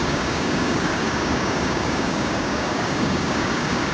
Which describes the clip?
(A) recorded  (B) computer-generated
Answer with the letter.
B